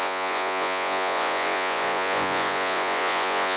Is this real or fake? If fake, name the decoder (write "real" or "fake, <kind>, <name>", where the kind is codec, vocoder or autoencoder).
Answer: fake, vocoder, Vocos